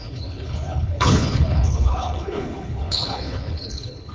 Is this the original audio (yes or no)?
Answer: no